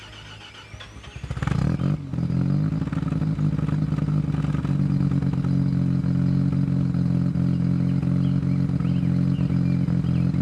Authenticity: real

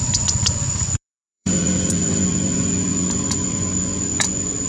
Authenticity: fake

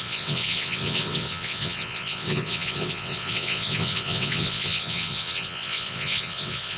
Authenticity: fake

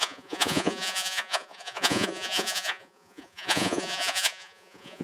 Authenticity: fake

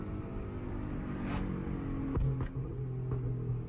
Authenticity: real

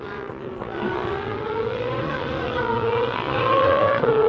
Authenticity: fake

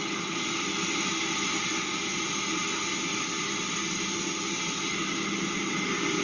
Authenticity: real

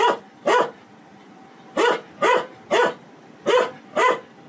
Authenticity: real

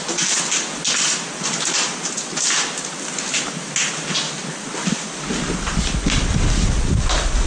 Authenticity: real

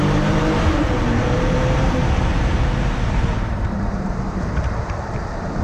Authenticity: fake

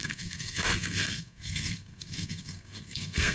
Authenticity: fake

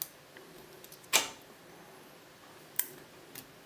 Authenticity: real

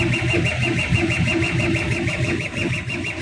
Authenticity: real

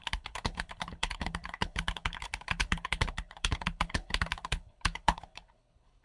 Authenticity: fake